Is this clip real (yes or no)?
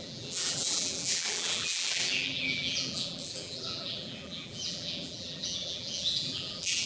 no